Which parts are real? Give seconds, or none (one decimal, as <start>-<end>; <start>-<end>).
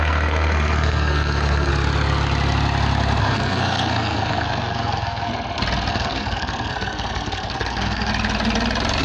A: 1.7-3.2; 5.3-5.9; 8.1-9.0